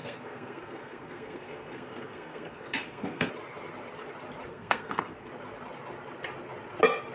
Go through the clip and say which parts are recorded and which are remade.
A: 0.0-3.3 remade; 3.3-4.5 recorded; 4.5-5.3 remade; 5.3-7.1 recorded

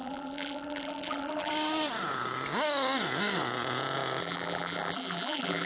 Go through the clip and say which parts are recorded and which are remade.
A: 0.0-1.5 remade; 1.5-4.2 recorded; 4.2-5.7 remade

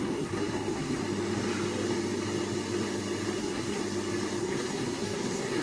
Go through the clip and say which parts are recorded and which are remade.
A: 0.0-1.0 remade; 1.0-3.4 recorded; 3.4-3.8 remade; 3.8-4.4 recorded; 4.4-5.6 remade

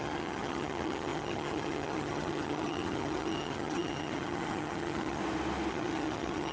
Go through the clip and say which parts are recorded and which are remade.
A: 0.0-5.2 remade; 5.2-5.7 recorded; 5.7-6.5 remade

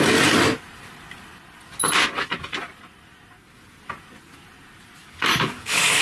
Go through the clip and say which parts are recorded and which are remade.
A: 0.0-5.0 recorded; 5.0-6.0 remade

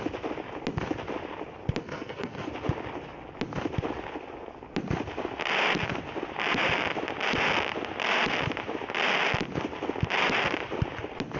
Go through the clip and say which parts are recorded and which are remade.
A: 0.0-1.8 recorded; 1.8-2.5 remade; 2.5-11.4 recorded